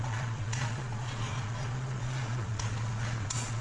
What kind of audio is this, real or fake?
fake